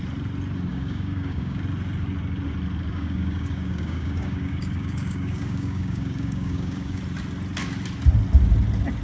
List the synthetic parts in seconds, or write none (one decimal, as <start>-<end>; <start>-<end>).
0.7-1.6; 2.9-7.0